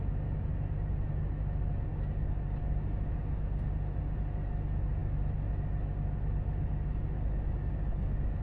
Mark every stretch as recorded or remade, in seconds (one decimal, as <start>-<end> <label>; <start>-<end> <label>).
0.0-8.4 recorded